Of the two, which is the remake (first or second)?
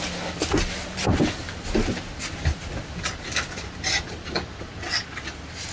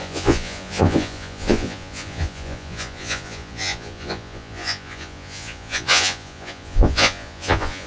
second